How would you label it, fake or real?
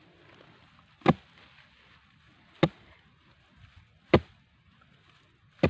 real